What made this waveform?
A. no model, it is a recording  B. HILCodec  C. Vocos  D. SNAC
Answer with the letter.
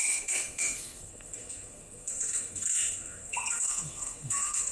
D